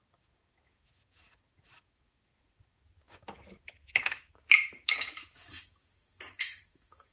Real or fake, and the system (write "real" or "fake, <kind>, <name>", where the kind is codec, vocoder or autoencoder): fake, autoencoder, DAC-VAE